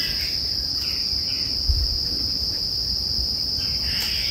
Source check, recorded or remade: recorded